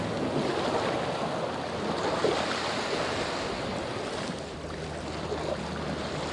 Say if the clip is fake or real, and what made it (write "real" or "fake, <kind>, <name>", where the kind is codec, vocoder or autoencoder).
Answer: real